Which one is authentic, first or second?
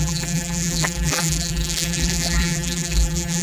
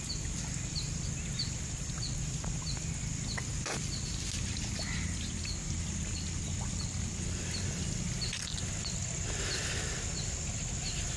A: second